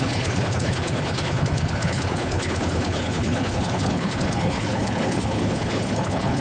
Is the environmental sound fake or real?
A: fake